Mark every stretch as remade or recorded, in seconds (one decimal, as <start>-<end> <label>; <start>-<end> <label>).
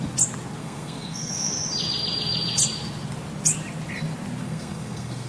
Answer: 0.0-0.6 recorded; 0.6-1.5 remade; 1.5-4.4 recorded; 4.4-5.3 remade